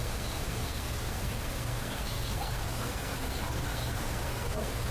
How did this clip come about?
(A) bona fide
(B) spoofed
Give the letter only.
B